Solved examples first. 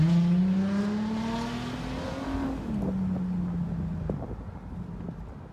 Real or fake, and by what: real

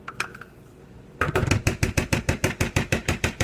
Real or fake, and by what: fake, vocoder, BigVGAN v2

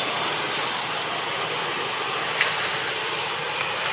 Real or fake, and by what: real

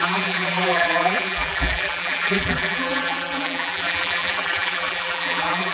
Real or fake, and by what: fake, vocoder, BigVGAN v2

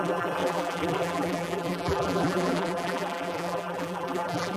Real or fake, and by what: fake, vocoder, BigVGAN v2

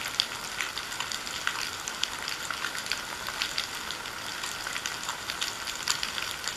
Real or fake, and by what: real